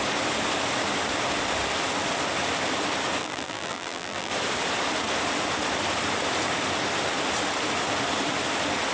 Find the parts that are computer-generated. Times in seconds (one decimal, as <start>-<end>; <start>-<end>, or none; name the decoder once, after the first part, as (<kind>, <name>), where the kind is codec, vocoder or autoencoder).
3.2-4.3 (vocoder, BigVGAN v2)